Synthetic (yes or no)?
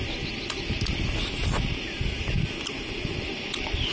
no